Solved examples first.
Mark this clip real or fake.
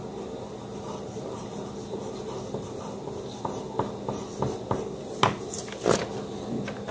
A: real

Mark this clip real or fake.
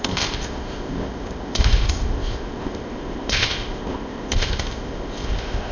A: fake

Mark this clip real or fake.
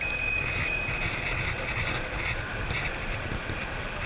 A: real